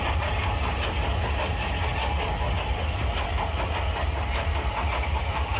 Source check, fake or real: real